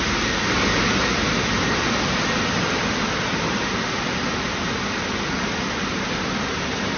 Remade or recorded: recorded